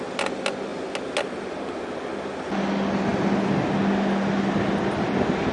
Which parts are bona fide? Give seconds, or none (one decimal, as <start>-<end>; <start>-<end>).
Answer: 0.0-5.5